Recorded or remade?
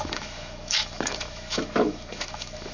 remade